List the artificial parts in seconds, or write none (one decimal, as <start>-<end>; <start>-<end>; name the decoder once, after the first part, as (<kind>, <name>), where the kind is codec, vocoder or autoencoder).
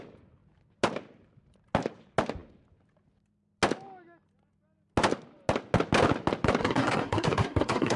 6.6-8.0 (codec, SNAC)